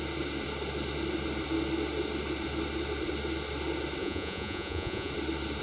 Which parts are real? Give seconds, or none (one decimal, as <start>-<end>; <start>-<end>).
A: 0.0-4.0; 5.1-5.6